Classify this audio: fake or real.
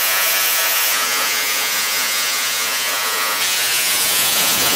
fake